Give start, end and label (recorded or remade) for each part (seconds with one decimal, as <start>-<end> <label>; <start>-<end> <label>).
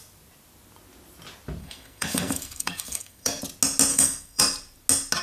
0.0-1.6 recorded; 1.6-3.4 remade; 3.4-3.9 recorded; 3.9-4.4 remade; 4.4-5.2 recorded